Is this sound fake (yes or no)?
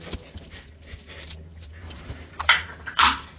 yes